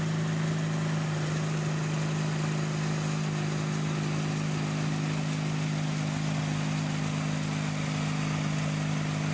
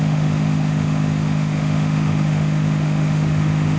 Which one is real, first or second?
first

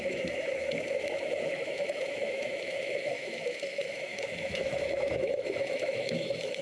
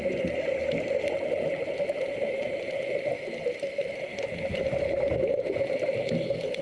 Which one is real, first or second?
second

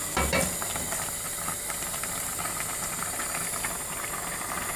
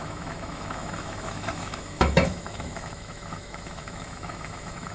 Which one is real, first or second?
first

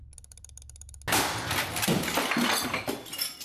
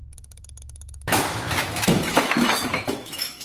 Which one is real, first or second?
first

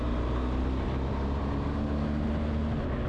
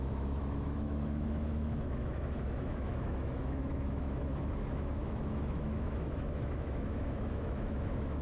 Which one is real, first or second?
first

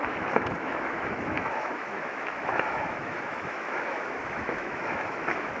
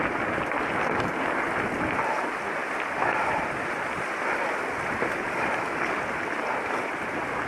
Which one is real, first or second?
second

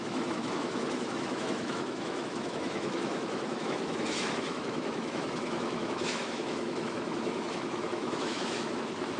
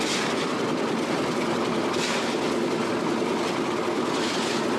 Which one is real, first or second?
second